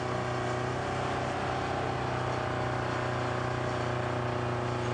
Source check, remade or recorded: recorded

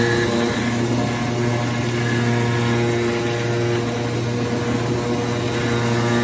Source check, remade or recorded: recorded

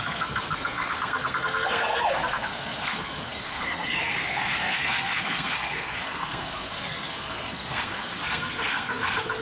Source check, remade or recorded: remade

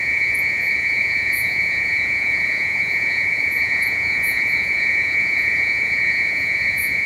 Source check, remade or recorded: remade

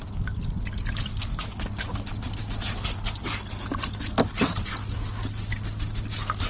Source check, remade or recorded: recorded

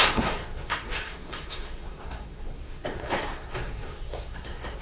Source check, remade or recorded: remade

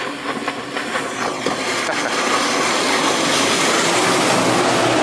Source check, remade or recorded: recorded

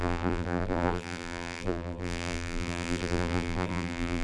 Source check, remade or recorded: remade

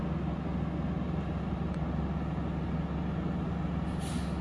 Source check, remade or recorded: recorded